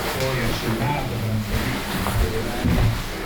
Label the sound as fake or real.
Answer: real